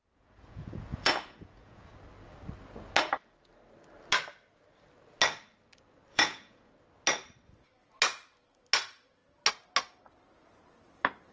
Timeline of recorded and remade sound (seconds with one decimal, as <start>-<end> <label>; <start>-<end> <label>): 0.0-1.9 remade; 1.9-6.1 recorded; 6.1-6.7 remade; 6.7-11.3 recorded